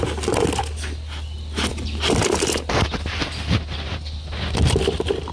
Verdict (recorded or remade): recorded